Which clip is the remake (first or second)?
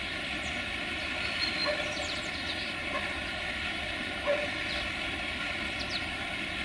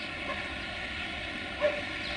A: first